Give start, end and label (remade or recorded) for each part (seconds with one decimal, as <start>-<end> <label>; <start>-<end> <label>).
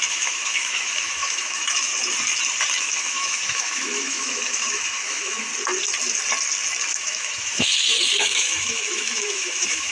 0.0-1.9 remade; 1.9-2.8 recorded; 2.8-5.5 remade; 5.5-6.9 recorded; 6.9-9.9 remade